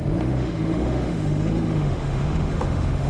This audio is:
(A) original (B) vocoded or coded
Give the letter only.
B